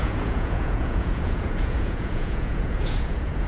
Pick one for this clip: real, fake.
fake